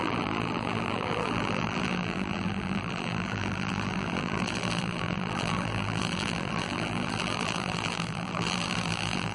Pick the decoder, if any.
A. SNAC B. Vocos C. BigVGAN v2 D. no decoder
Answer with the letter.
C